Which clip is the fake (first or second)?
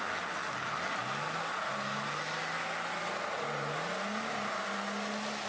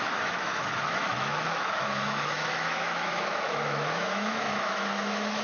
second